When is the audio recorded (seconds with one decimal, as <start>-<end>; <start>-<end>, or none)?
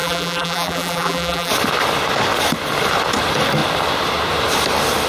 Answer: 1.5-5.1